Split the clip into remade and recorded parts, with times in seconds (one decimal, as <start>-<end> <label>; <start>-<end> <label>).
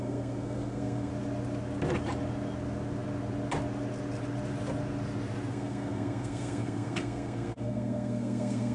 0.0-1.1 remade; 1.1-5.5 recorded; 5.5-8.7 remade